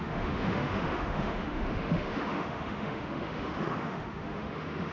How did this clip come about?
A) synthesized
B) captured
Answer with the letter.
A